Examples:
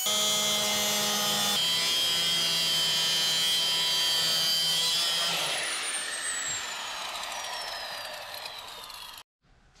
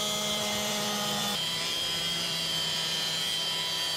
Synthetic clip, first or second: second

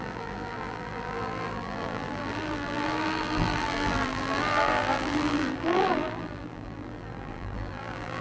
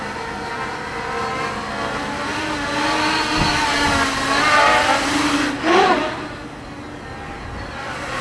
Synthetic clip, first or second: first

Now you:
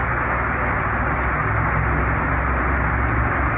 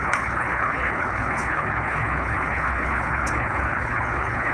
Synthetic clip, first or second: second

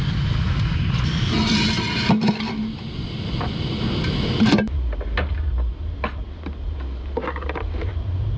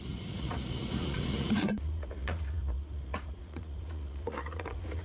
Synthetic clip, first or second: second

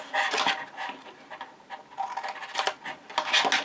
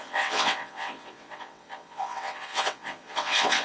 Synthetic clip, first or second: second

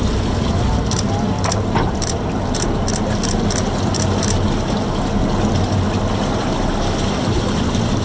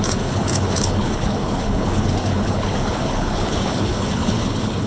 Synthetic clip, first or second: second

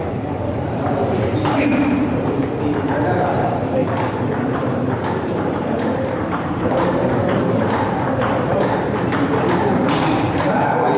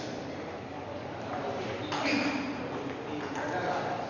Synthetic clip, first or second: first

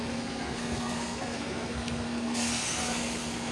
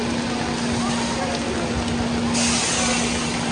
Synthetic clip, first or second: first